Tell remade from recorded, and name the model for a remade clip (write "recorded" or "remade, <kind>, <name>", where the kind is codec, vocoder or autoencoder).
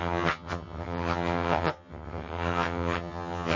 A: remade, vocoder, HiFi-GAN